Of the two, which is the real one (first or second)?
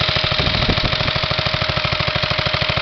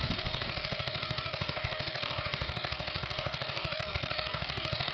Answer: first